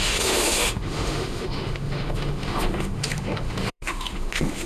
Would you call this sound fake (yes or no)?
yes